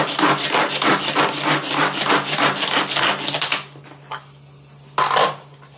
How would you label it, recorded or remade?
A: recorded